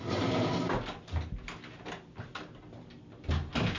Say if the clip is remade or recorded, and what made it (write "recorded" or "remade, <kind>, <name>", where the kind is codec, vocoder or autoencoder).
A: recorded